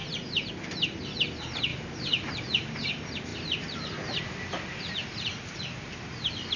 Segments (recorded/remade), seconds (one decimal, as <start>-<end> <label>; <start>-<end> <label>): 0.0-0.5 remade; 0.5-1.7 recorded; 1.7-2.9 remade; 2.9-6.6 recorded